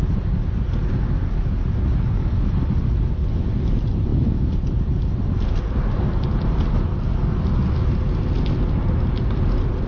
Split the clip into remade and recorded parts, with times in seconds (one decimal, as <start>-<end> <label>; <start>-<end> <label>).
0.0-9.9 recorded